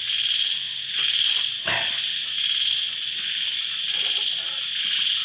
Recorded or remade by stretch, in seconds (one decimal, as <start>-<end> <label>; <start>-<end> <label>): 0.0-5.2 recorded